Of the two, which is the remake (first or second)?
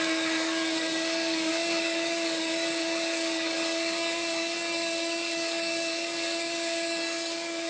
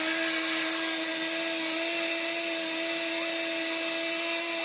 first